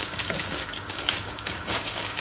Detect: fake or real fake